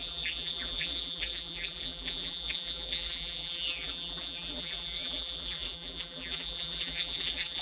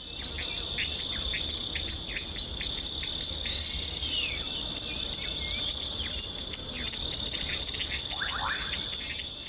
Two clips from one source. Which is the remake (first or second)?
first